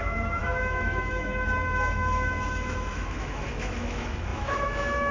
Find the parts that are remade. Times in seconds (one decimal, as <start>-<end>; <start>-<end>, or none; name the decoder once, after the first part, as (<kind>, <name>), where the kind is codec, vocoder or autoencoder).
0.0-5.1 (autoencoder, DAC-VAE)